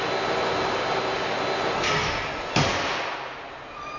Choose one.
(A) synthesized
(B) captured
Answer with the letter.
B